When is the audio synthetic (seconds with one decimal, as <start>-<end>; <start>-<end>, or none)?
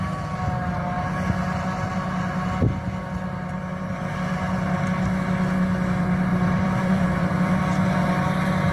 6.3-7.6